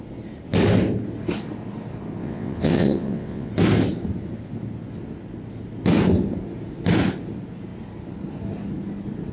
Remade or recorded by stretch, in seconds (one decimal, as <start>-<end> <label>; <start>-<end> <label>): 0.0-2.2 recorded; 2.2-3.5 remade; 3.5-9.3 recorded